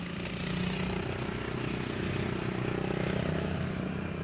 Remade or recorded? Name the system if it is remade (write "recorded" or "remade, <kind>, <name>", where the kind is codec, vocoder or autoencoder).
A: recorded